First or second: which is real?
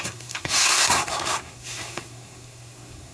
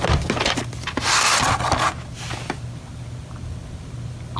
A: second